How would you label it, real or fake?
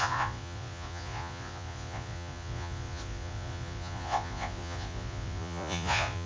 fake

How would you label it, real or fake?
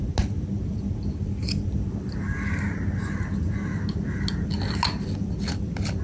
real